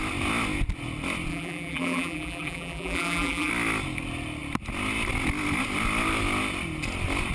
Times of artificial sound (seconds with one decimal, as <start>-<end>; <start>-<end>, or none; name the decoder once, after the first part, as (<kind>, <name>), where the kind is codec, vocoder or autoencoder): 1.3-3.5 (vocoder, BigVGAN v2)